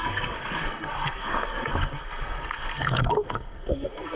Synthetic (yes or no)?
yes